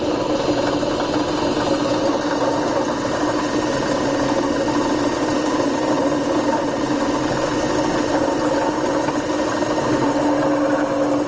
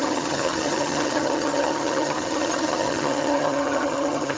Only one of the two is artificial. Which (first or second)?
second